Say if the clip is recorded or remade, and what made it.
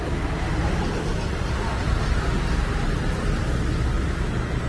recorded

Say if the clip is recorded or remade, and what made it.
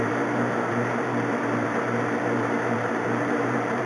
remade, vocoder, BigVGAN v2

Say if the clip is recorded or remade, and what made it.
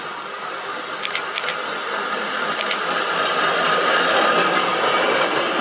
recorded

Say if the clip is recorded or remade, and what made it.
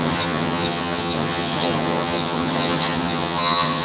remade, vocoder, HiFi-GAN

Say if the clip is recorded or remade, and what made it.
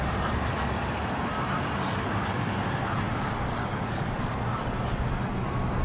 recorded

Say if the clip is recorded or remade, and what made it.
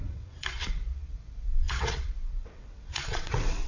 remade, vocoder, WaveNeXt